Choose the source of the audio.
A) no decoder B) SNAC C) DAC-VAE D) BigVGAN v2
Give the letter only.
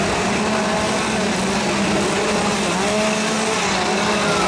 A